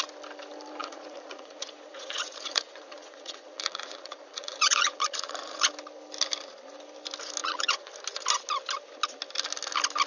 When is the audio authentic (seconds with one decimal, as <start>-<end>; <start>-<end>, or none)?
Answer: 0.0-0.8; 5.7-7.4; 7.9-10.1